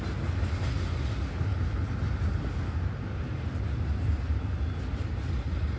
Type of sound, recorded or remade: recorded